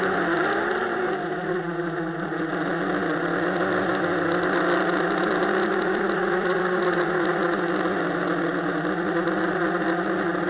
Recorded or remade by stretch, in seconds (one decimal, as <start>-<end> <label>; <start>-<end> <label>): 0.0-5.2 recorded; 5.2-6.7 remade; 6.7-10.5 recorded